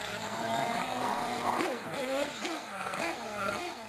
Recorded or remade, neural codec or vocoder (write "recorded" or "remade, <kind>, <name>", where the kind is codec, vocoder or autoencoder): remade, codec, SNAC